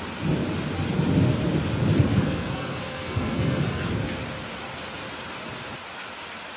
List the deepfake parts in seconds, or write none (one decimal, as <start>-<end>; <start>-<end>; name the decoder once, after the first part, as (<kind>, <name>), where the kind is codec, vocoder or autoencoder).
2.1-3.9 (codec, SNAC)